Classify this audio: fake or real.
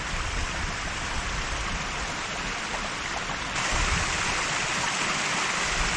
fake